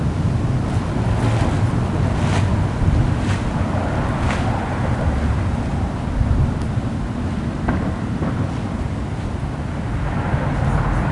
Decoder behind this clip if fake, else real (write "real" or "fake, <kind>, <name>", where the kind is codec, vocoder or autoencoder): real